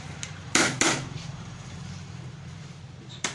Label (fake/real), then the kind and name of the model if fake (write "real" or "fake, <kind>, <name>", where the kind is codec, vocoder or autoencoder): fake, vocoder, BigVGAN v2